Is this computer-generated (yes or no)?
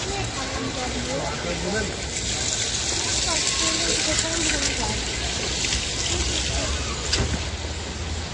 no